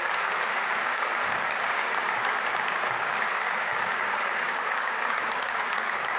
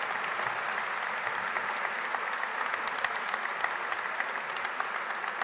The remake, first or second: first